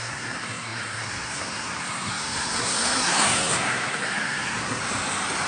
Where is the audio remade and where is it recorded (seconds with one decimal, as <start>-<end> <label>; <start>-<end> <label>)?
0.0-4.8 remade; 4.8-5.5 recorded